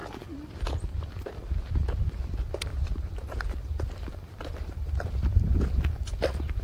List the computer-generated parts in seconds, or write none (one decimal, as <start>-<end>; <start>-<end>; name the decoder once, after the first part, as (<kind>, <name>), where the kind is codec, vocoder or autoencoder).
2.7-3.6 (vocoder, BigVGAN v2); 4.1-4.7